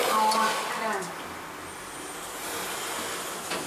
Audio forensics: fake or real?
real